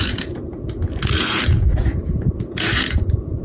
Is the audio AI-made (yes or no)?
yes